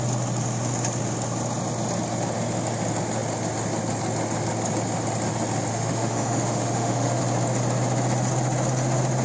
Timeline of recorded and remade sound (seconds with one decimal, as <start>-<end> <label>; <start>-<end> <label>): 0.0-5.7 recorded; 5.7-7.2 remade; 7.2-9.2 recorded